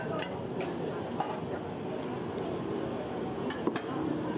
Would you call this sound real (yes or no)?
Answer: yes